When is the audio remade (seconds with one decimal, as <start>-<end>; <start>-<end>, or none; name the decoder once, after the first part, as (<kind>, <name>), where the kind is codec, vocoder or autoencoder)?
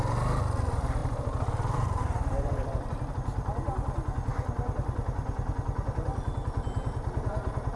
1.0-3.1 (vocoder, BigVGAN v2)